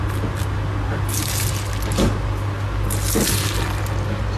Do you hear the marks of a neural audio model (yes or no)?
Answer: no